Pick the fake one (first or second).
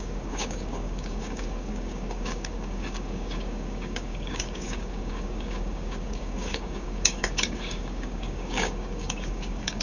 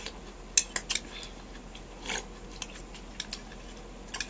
first